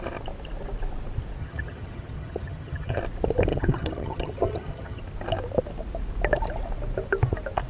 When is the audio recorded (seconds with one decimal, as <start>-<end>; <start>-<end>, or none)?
0.0-1.4; 3.0-3.5; 5.0-7.7